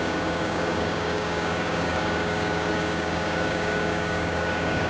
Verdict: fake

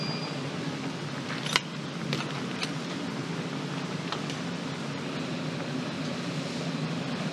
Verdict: fake